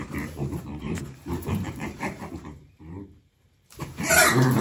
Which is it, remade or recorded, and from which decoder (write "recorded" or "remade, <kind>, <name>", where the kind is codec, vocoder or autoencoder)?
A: remade, vocoder, BigVGAN v2